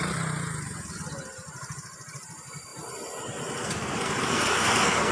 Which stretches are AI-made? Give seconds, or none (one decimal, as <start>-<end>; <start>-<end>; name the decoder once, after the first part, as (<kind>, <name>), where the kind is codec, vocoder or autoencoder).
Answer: 3.6-5.1 (codec, SNAC)